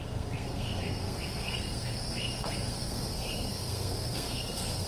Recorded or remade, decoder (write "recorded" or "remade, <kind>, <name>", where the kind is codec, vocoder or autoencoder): remade, codec, SNAC